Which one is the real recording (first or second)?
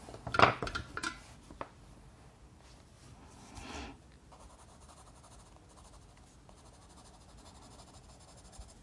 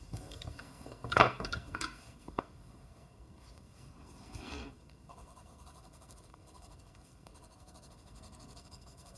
first